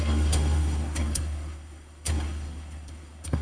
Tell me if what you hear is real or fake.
fake